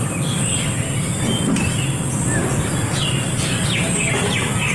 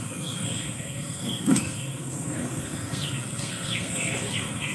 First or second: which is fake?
second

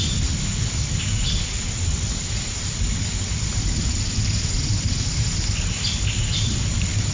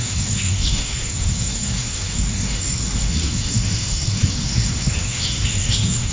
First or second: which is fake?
second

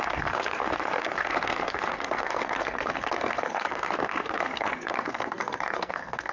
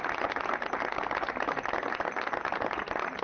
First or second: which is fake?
first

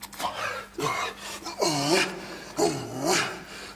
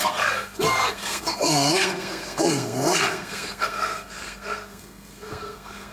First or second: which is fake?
second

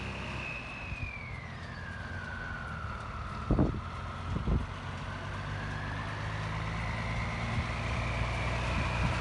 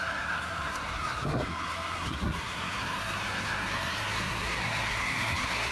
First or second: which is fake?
second